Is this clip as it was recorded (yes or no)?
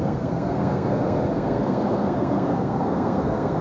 no